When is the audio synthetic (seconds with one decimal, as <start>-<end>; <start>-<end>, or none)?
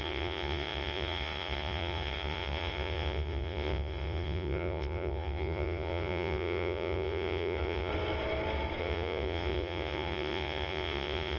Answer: 0.0-7.9; 8.8-11.4